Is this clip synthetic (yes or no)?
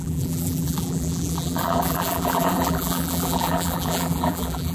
yes